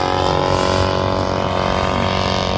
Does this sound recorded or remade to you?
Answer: recorded